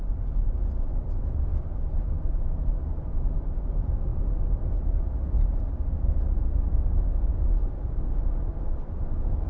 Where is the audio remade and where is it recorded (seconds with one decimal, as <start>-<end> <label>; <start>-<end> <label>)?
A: 0.0-8.5 recorded; 8.5-9.1 remade; 9.1-9.5 recorded